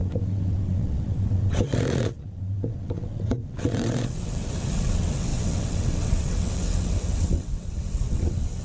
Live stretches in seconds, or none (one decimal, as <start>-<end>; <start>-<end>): none